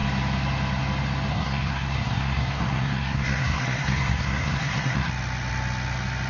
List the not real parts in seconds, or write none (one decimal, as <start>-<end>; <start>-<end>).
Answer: 1.3-5.1